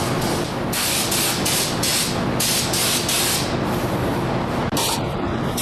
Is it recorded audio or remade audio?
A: recorded